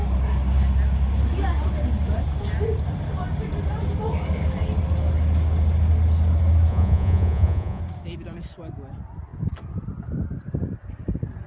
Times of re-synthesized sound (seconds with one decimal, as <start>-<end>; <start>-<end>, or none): 6.7-7.8